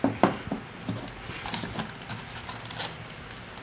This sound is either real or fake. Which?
real